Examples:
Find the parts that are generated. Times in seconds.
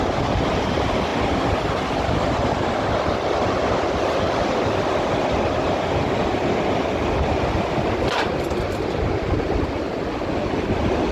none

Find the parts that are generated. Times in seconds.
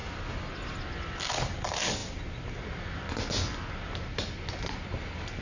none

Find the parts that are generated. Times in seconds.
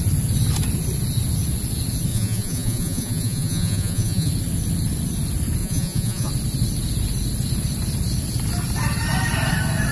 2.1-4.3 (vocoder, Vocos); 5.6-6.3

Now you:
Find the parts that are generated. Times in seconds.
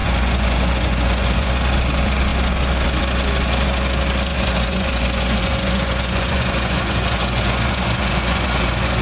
0.0-1.5 (vocoder, Vocos); 4.3-9.0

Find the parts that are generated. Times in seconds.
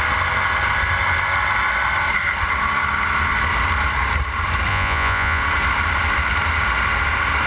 4.7-5.4 (vocoder, Vocos)